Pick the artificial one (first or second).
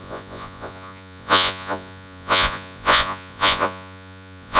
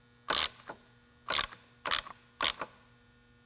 first